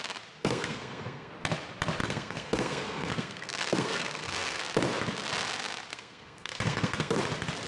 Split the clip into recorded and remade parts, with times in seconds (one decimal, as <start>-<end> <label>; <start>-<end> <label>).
0.0-0.4 recorded; 0.4-1.3 remade; 1.3-2.0 recorded; 2.0-4.6 remade; 4.6-5.9 recorded; 5.9-7.2 remade; 7.2-7.7 recorded